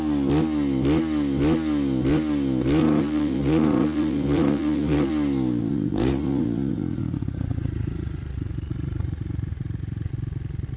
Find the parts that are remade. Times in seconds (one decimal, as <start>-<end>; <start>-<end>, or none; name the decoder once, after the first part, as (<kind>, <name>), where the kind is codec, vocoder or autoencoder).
2.8-5.1 (vocoder, Vocos); 5.7-10.1